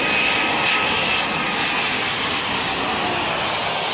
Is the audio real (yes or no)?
yes